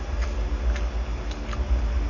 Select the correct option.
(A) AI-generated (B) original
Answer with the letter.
B